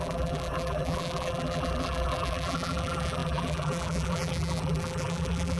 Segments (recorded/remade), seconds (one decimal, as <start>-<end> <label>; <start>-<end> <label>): 0.0-5.6 remade